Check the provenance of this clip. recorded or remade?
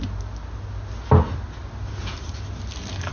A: recorded